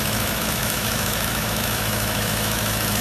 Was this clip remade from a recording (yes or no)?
yes